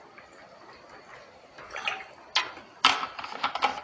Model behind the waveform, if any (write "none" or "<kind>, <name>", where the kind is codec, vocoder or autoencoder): none